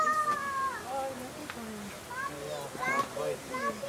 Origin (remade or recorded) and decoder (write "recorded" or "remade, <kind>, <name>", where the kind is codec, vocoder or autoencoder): recorded